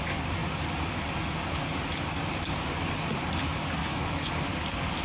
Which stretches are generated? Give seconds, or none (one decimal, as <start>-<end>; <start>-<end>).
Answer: 3.8-4.3

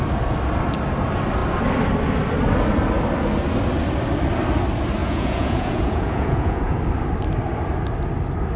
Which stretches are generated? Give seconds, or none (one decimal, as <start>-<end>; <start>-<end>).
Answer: 5.0-6.8

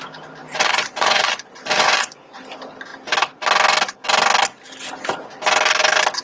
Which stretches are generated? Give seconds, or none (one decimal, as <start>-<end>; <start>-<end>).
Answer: 0.4-2.4

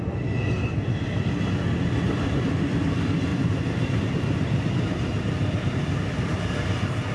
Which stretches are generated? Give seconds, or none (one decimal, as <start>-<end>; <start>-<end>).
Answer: 3.3-4.0; 5.1-7.1

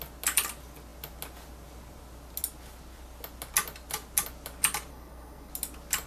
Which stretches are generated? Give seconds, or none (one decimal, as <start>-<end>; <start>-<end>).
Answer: 4.9-5.5

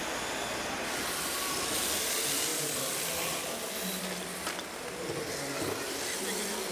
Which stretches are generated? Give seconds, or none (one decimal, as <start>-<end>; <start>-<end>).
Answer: none

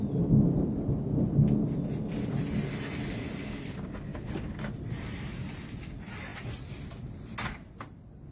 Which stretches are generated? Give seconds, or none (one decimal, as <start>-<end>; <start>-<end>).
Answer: 4.1-5.3

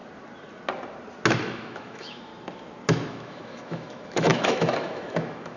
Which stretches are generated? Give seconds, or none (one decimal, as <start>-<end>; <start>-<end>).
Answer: 1.4-2.3; 3.1-5.6